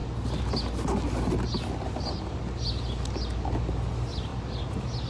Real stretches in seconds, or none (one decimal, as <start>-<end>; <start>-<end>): 0.0-5.1